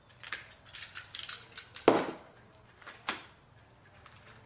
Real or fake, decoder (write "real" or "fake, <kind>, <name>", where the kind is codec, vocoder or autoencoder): real